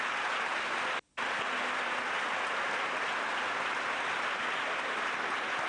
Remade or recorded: recorded